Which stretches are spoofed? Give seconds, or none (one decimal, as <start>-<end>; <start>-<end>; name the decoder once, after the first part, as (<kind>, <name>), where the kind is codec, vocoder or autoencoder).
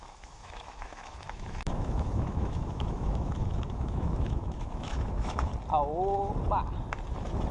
0.0-5.5 (autoencoder, DAC-VAE)